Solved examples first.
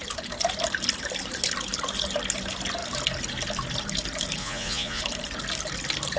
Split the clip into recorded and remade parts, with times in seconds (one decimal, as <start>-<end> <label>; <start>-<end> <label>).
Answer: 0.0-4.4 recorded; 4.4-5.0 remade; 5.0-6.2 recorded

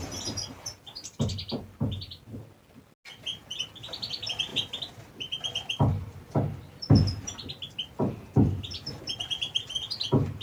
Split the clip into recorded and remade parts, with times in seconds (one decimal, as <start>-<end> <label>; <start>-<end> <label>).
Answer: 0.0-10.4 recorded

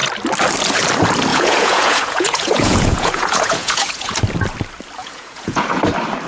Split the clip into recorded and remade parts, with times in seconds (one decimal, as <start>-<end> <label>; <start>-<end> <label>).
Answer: 0.0-1.3 recorded; 1.3-4.2 remade; 4.2-5.0 recorded; 5.0-5.8 remade; 5.8-6.3 recorded

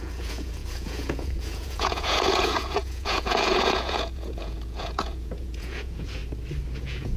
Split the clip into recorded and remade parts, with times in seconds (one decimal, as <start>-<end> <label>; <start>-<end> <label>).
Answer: 0.0-6.2 remade; 6.2-6.8 recorded; 6.8-7.2 remade